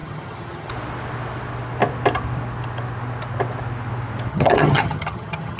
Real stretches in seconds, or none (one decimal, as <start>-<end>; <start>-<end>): 0.7-4.3